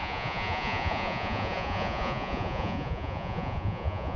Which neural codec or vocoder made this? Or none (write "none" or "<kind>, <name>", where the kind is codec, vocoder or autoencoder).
vocoder, Vocos